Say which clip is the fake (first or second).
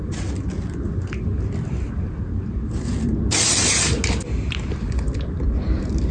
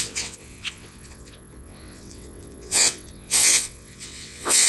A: second